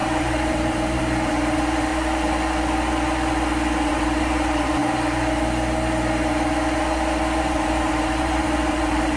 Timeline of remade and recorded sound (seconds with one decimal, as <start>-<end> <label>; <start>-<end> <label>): 0.0-1.9 remade; 1.9-3.9 recorded; 3.9-4.8 remade; 4.8-7.4 recorded; 7.4-9.2 remade